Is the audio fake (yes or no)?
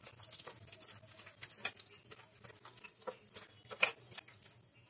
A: no